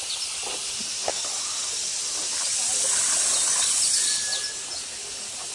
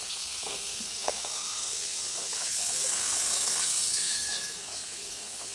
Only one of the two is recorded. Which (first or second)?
first